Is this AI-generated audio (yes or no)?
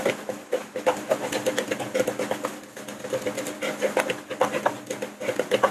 no